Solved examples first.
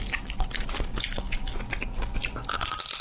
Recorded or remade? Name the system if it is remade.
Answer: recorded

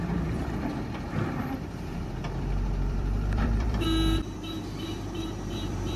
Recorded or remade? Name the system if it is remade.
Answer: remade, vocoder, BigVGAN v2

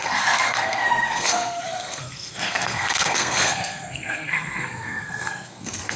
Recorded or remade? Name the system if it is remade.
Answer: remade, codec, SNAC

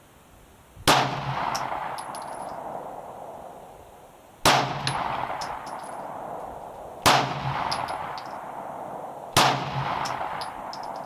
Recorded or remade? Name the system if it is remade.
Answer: recorded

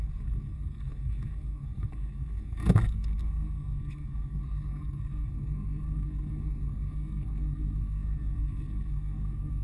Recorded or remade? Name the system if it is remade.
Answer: remade, codec, SNAC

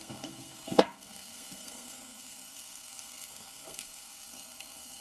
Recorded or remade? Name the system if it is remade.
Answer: remade, codec, SNAC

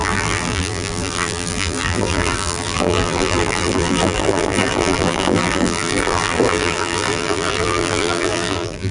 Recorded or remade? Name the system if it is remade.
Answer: remade, vocoder, BigVGAN v2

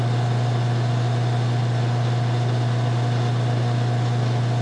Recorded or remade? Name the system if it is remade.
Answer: recorded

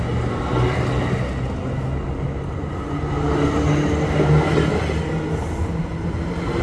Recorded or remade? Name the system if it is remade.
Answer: recorded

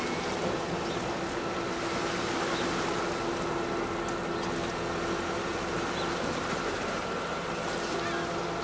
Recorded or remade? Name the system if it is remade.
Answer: recorded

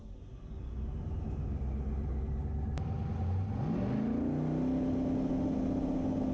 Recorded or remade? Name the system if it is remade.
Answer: recorded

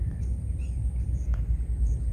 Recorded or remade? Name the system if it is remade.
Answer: recorded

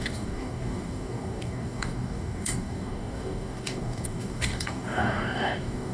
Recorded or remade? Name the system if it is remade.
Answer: remade, codec, DAC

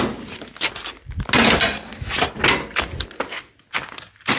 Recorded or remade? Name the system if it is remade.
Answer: recorded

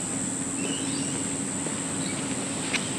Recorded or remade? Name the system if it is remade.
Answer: recorded